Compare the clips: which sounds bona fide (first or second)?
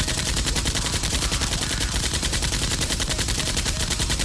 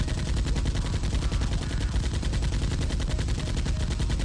second